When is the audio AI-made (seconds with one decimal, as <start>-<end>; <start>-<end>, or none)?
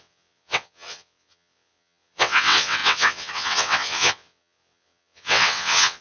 0.0-6.0